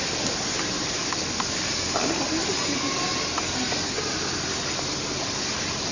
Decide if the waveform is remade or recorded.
recorded